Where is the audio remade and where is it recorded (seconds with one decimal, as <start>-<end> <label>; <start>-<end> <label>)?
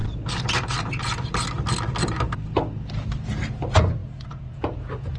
0.0-4.0 recorded; 4.0-5.2 remade